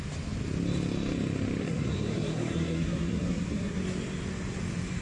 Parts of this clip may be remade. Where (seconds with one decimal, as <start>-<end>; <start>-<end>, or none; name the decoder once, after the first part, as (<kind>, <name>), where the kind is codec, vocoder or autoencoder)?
1.6-3.8 (codec, SNAC)